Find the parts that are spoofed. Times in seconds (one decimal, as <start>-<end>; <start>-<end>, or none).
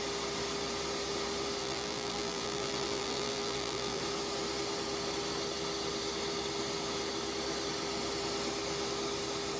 1.6-4.0